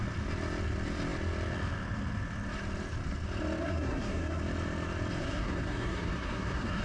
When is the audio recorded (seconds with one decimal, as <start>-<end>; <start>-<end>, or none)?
0.0-3.6; 4.4-5.2

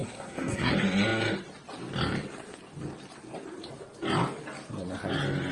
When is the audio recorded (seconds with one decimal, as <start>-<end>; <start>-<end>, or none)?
0.7-5.5

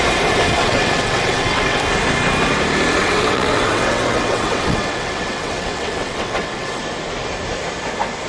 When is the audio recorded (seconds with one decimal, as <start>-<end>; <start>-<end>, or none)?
0.0-0.6; 1.8-3.0; 6.8-8.3

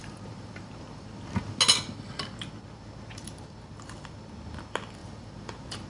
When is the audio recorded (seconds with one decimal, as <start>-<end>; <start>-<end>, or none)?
1.6-5.0

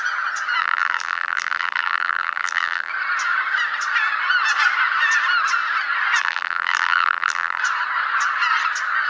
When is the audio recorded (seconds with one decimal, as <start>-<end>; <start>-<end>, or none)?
0.0-0.6; 2.9-6.2; 7.6-9.1

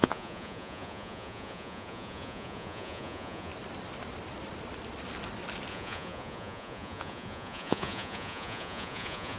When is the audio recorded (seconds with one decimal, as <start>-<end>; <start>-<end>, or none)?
3.5-5.7

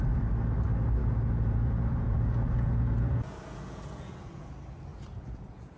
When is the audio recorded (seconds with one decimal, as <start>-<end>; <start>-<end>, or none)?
0.0-1.0; 4.5-4.9

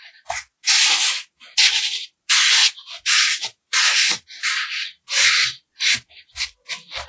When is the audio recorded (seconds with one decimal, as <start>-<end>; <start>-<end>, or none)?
0.0-7.1